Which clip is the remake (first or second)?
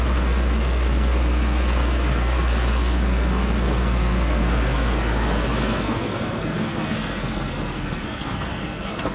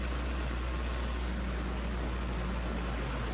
first